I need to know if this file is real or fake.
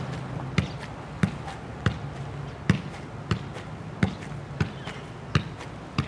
real